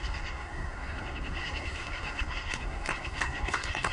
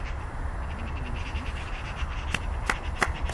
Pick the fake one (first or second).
first